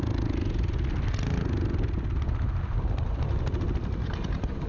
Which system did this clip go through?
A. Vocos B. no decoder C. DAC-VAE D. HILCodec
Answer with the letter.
B